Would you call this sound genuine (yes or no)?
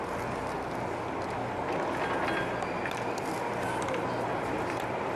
yes